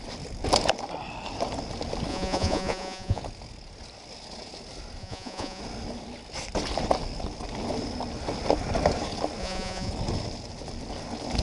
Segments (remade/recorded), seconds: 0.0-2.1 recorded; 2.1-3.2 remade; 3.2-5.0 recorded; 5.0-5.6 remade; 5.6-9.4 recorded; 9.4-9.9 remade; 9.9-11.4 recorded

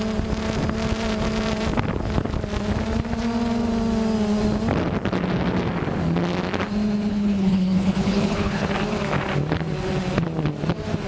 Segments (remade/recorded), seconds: 0.0-7.1 recorded; 7.1-8.7 remade; 8.7-11.1 recorded

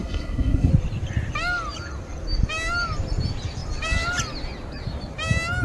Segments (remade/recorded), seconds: 0.0-0.7 remade; 0.7-5.6 recorded

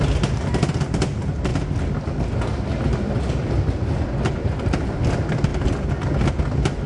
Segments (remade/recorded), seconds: 0.0-6.9 recorded

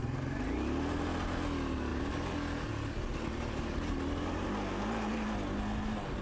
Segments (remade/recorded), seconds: 0.0-6.2 recorded

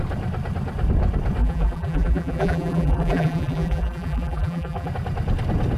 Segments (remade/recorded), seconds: 0.0-1.4 recorded; 1.4-4.9 remade; 4.9-5.8 recorded

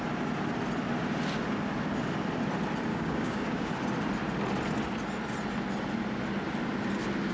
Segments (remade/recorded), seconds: 0.0-2.9 recorded; 2.9-3.7 remade; 3.7-7.3 recorded

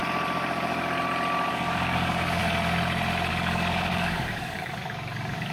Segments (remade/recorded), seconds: 0.0-1.5 recorded; 1.5-2.4 remade; 2.4-3.3 recorded; 3.3-5.5 remade